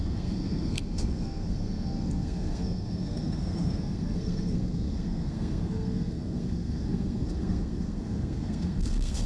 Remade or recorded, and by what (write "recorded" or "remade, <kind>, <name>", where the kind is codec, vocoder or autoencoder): remade, codec, SNAC